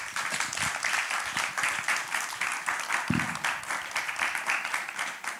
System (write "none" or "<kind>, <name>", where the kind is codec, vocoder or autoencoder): none